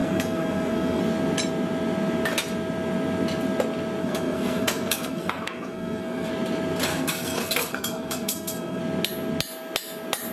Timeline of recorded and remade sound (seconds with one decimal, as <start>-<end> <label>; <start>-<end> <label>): 0.0-1.0 remade; 1.0-4.0 recorded; 4.0-6.3 remade; 6.3-6.9 recorded; 6.9-8.8 remade; 8.8-10.3 recorded